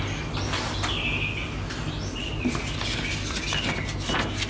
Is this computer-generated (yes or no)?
no